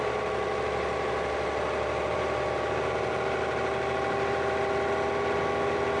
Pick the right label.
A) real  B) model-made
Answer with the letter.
B